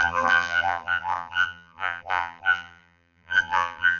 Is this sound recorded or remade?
remade